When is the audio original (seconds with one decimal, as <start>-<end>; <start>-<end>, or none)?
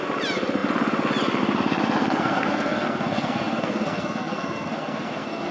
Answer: 0.0-2.0